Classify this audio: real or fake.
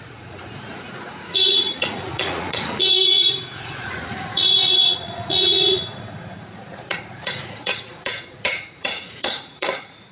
fake